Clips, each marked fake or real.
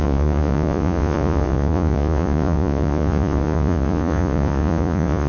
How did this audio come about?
fake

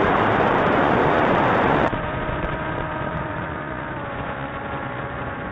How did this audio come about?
fake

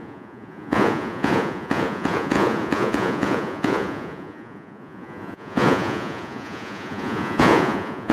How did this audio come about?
fake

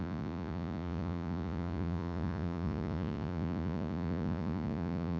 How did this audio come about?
fake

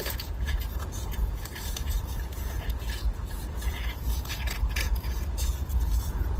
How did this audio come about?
fake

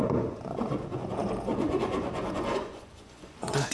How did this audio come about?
fake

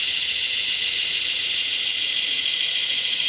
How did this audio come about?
fake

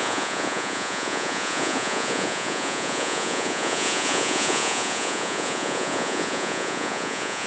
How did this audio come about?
fake